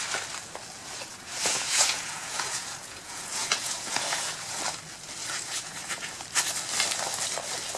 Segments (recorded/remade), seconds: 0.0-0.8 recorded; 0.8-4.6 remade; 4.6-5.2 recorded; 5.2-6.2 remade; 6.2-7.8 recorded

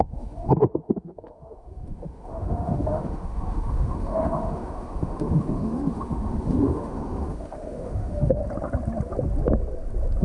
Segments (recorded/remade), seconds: 0.0-8.4 remade; 8.4-10.2 recorded

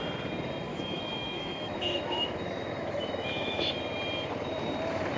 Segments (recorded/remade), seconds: 0.0-0.7 recorded; 0.7-3.8 remade; 3.8-5.2 recorded

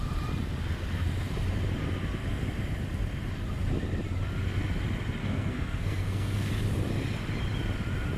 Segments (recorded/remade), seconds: 0.0-5.2 recorded; 5.2-6.5 remade; 6.5-8.2 recorded

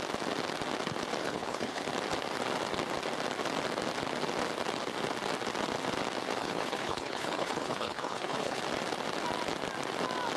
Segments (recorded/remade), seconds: 0.0-1.2 recorded; 1.2-1.8 remade; 1.8-6.4 recorded; 6.4-8.6 remade; 8.6-10.4 recorded